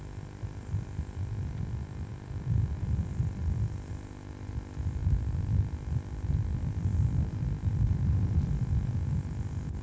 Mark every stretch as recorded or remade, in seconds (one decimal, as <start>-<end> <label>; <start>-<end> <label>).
0.0-3.4 recorded; 3.4-3.9 remade; 3.9-5.0 recorded; 5.0-7.7 remade; 7.7-9.8 recorded